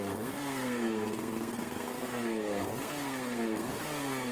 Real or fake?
fake